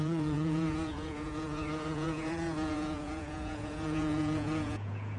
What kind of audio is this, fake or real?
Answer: fake